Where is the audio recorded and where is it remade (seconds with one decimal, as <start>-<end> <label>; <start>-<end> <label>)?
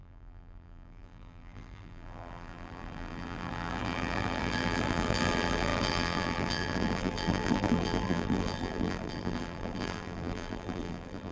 0.0-11.3 remade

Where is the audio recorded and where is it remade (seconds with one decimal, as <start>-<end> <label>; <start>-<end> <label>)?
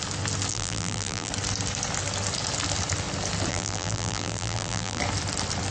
0.0-0.5 recorded; 0.5-1.3 remade; 1.3-3.5 recorded; 3.5-5.0 remade; 5.0-5.7 recorded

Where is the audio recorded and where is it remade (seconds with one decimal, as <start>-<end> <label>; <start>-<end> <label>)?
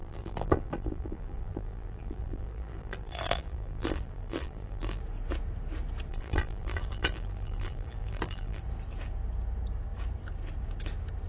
0.0-5.0 remade; 5.0-6.1 recorded; 6.1-8.6 remade; 8.6-11.3 recorded